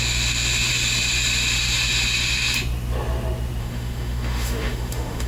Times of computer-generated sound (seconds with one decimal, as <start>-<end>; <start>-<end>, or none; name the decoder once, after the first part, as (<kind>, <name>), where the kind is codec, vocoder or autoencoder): 0.0-0.7 (autoencoder, DAC-VAE); 3.6-5.3